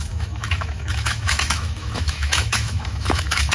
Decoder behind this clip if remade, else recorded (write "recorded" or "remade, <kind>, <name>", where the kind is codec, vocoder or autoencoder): remade, autoencoder, DAC-VAE